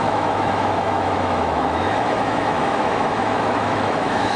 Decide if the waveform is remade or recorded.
remade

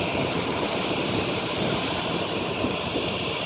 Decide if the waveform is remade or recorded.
remade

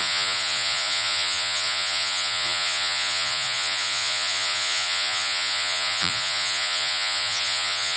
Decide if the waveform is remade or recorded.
remade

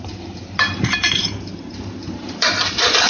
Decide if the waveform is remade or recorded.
remade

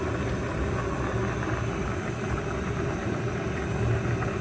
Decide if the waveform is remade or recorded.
recorded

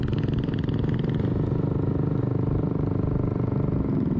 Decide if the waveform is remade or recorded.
recorded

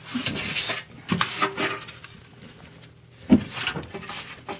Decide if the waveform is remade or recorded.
recorded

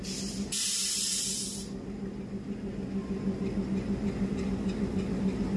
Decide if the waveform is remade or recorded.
recorded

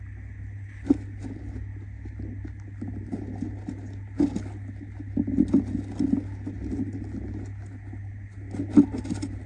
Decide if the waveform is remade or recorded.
recorded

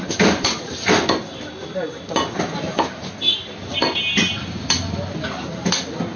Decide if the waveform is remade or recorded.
recorded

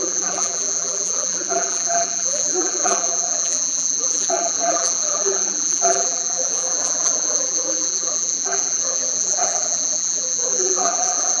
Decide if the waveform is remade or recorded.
remade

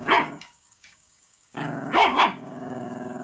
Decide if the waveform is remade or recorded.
remade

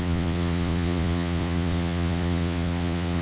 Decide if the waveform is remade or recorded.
remade